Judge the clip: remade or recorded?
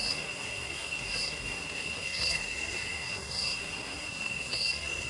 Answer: remade